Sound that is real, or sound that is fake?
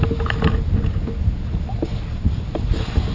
real